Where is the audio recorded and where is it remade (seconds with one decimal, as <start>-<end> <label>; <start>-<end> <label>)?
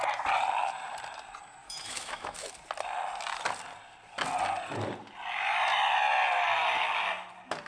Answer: 0.0-1.6 recorded; 1.6-2.5 remade; 2.5-7.7 recorded